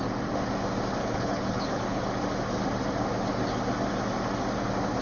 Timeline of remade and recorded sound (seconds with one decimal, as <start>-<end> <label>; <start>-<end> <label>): 0.0-1.0 recorded; 1.0-2.0 remade; 2.0-5.0 recorded